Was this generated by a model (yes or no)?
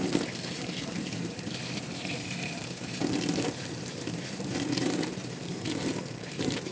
yes